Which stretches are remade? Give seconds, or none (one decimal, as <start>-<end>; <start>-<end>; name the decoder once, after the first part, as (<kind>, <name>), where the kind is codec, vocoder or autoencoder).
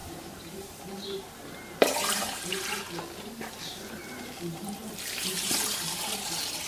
0.0-1.3 (vocoder, BigVGAN v2); 1.8-2.6; 4.0-6.2